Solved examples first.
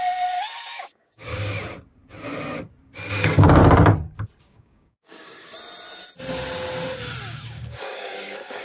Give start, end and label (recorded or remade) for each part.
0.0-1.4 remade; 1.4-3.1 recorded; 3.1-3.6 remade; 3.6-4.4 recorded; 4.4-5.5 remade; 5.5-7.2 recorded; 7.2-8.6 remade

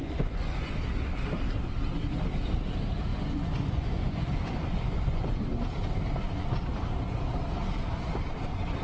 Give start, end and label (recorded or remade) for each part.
0.0-0.7 remade; 0.7-3.1 recorded; 3.1-5.2 remade; 5.2-8.8 recorded